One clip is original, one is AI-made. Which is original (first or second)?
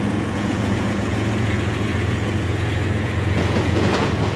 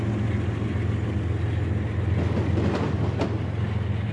second